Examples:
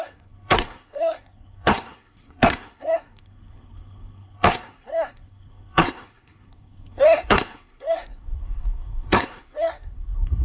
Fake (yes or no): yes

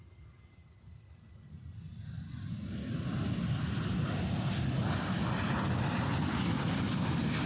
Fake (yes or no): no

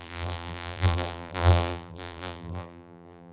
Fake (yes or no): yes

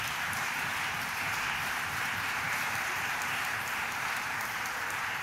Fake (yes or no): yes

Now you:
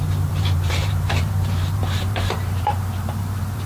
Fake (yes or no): yes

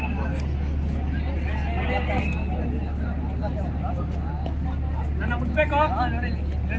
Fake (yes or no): no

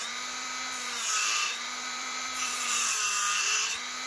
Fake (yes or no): yes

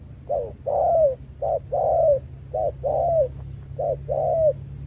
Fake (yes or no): no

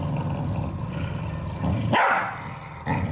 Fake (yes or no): no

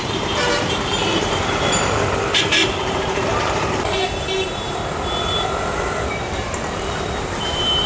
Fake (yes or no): yes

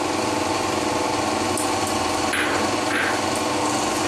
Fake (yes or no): no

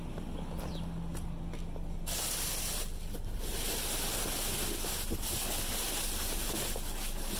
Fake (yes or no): no